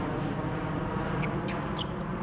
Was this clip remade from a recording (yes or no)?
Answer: no